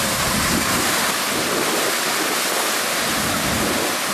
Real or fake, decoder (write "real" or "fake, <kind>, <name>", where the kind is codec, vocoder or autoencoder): real